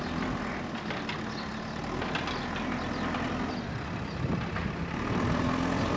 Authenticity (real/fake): real